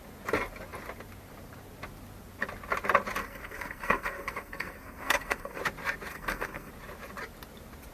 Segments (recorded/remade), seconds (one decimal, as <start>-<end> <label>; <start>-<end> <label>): 0.0-3.2 recorded; 3.2-5.6 remade; 5.6-6.1 recorded; 6.1-6.7 remade; 6.7-7.9 recorded

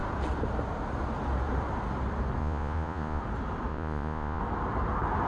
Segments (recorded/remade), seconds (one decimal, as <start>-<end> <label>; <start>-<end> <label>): 0.0-2.4 recorded; 2.4-3.2 remade; 3.2-3.7 recorded; 3.7-4.4 remade; 4.4-5.3 recorded

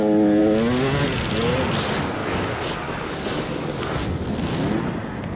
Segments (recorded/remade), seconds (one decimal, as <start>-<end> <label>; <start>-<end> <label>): 0.0-2.2 recorded; 2.2-3.8 remade; 3.8-5.4 recorded